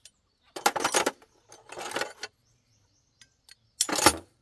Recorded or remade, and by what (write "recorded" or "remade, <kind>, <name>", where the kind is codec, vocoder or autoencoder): recorded